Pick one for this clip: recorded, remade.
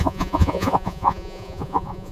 remade